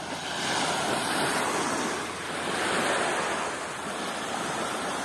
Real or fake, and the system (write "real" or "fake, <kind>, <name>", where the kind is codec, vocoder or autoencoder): real